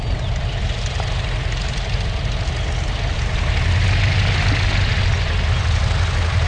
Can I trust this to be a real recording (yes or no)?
yes